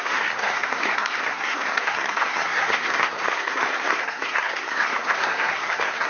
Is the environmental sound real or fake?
fake